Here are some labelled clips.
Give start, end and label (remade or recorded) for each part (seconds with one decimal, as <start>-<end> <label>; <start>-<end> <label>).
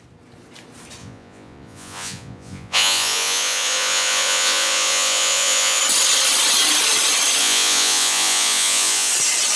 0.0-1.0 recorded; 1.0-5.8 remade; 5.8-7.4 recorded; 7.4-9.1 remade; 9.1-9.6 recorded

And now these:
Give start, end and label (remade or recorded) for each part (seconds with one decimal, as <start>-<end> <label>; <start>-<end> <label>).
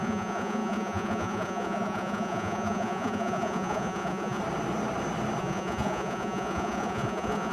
0.0-4.4 remade; 4.4-5.4 recorded; 5.4-7.5 remade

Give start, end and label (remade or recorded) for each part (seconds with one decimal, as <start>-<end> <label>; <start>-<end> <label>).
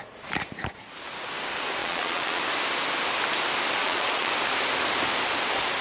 0.0-1.8 recorded; 1.8-2.4 remade; 2.4-3.8 recorded; 3.8-4.3 remade; 4.3-5.8 recorded